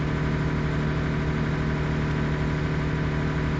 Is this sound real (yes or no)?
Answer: yes